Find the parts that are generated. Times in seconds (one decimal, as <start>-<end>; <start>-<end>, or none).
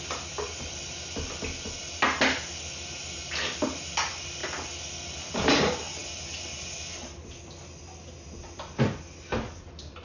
none